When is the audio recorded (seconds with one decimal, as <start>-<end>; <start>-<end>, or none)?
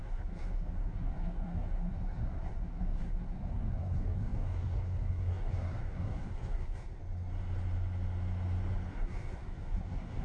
7.0-8.9